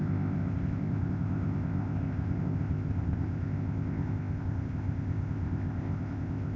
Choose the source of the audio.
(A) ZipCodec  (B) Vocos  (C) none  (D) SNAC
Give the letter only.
A